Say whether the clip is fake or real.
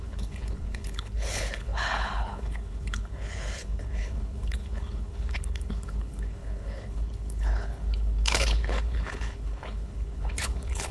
fake